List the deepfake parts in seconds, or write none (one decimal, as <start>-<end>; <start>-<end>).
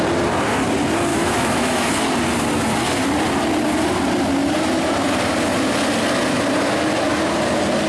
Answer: 1.1-1.9